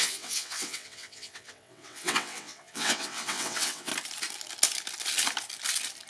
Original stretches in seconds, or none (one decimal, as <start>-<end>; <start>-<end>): 3.9-6.1